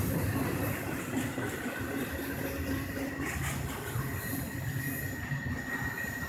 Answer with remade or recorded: recorded